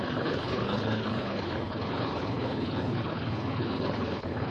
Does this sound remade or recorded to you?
remade